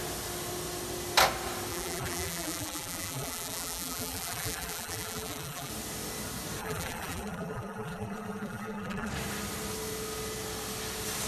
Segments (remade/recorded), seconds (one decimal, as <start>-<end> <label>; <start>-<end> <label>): 0.0-1.7 recorded; 1.7-5.7 remade; 5.7-6.6 recorded; 6.6-9.1 remade; 9.1-11.3 recorded